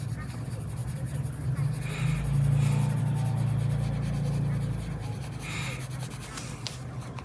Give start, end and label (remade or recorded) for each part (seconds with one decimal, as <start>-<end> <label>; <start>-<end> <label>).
0.0-7.2 recorded